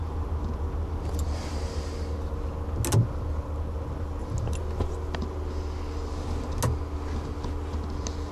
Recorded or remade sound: recorded